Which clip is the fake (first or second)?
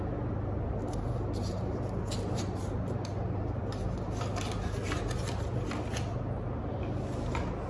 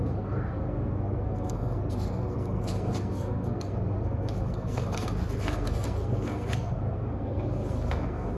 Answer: second